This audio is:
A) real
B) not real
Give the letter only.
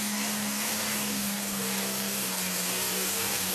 B